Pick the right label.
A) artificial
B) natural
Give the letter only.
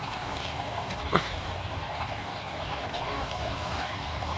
A